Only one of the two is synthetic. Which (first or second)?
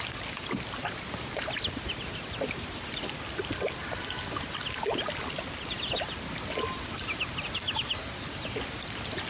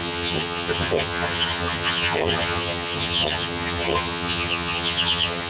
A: second